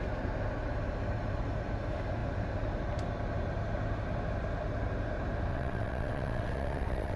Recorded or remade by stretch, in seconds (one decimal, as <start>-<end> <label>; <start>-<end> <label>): 0.0-5.5 recorded; 5.5-7.2 remade